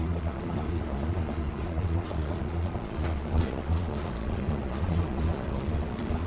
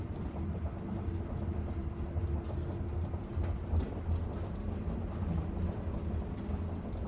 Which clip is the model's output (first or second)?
first